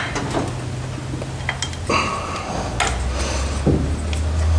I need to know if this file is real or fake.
real